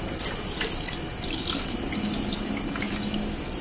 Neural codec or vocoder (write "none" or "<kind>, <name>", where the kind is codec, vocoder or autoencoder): none